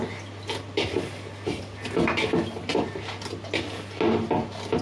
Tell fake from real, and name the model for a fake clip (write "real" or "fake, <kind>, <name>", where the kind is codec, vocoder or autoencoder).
real